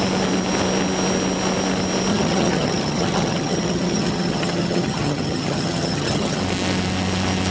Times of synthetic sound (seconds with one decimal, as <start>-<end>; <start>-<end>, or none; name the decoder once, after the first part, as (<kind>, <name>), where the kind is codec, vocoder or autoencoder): 2.1-6.4 (vocoder, HiFi-GAN)